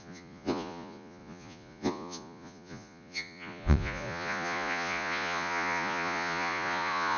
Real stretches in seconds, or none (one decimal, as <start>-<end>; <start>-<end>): none